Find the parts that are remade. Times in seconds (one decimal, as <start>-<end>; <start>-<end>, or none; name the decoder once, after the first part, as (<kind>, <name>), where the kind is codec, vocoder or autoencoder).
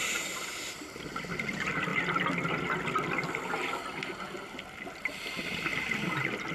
none